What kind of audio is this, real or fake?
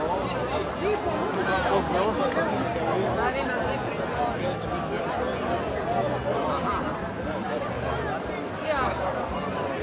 real